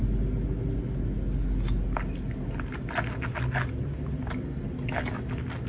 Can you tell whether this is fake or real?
real